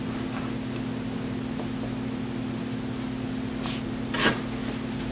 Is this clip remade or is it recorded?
recorded